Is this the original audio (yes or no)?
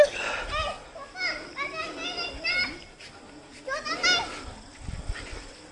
yes